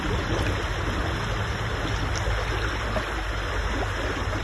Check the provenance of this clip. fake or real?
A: real